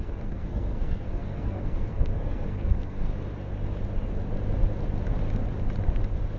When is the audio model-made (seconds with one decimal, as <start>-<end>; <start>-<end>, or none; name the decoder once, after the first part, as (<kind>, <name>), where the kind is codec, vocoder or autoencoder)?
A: 0.0-3.1 (codec, SNAC)